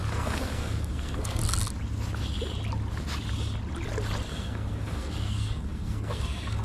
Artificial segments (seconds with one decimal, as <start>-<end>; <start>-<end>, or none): 0.0-1.4; 4.3-6.6